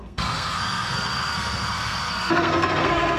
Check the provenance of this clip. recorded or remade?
remade